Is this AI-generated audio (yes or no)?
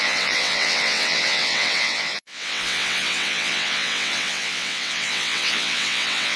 yes